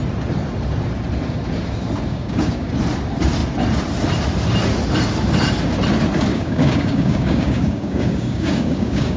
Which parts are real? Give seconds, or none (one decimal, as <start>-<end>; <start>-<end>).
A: 0.0-2.1; 2.7-6.3